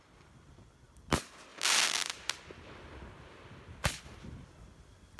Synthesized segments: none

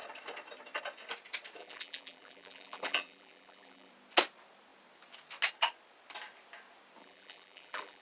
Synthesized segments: 1.6-3.9; 7.0-8.0

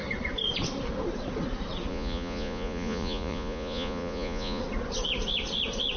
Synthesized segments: 1.9-4.6

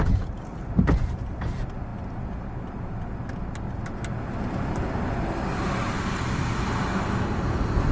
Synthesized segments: none